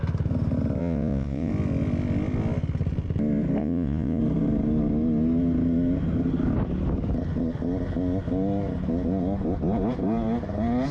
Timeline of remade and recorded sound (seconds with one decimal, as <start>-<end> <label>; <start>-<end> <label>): 0.0-0.8 recorded; 0.8-1.5 remade; 1.5-3.6 recorded; 3.6-4.2 remade; 4.2-10.9 recorded